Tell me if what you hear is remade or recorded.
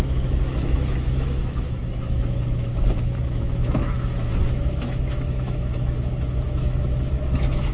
remade